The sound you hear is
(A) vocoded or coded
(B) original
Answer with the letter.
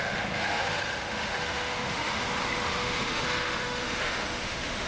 A